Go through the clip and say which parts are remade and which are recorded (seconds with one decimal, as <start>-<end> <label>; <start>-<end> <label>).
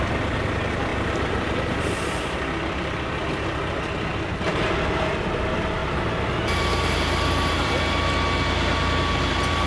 0.0-0.9 recorded; 0.9-2.2 remade; 2.2-5.8 recorded; 5.8-7.9 remade; 7.9-9.7 recorded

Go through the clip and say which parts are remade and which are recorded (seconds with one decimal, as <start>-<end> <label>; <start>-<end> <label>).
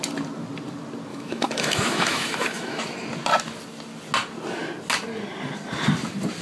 0.0-1.1 recorded; 1.1-2.8 remade; 2.8-6.4 recorded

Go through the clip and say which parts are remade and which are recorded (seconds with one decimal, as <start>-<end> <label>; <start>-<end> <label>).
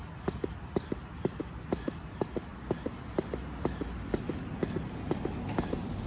0.0-6.1 recorded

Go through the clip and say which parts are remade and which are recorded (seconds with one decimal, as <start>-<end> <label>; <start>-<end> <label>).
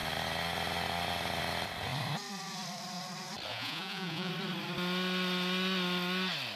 0.0-3.5 recorded; 3.5-4.3 remade; 4.3-6.6 recorded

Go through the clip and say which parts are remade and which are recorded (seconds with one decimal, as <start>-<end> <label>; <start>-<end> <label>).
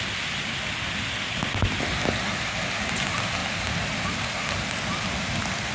0.0-5.7 recorded